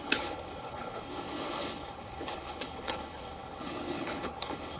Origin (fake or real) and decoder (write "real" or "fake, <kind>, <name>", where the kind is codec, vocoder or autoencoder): fake, codec, HILCodec